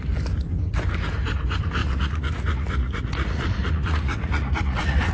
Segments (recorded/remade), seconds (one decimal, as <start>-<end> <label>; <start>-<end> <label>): 0.0-1.8 recorded; 1.8-5.1 remade